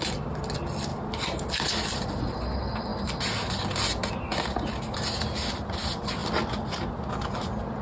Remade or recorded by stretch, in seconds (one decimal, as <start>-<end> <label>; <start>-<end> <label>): 0.0-7.8 recorded